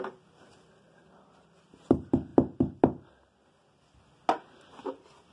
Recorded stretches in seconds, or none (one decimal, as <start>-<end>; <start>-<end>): 0.0-5.3